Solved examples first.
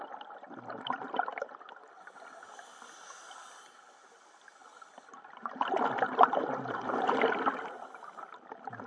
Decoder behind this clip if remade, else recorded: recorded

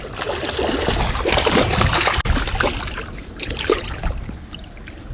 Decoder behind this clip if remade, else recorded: recorded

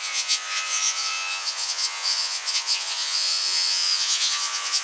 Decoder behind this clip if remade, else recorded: remade, vocoder, Vocos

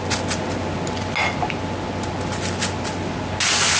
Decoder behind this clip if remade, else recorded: recorded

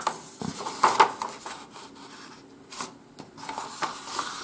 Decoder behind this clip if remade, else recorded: recorded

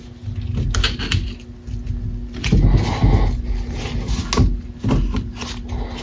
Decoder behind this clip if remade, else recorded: recorded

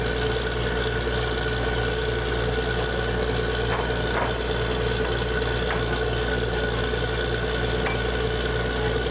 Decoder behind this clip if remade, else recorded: recorded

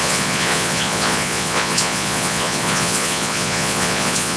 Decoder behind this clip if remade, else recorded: remade, vocoder, Vocos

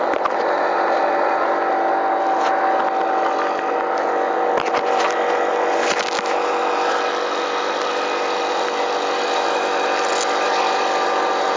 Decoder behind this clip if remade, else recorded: recorded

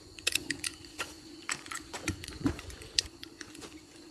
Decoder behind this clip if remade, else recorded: remade, vocoder, Vocos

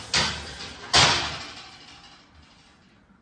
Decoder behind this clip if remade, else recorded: recorded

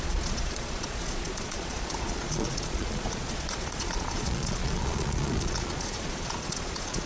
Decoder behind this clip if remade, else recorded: remade, vocoder, Vocos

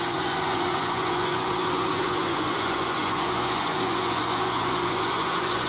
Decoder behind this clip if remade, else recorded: remade, vocoder, Vocos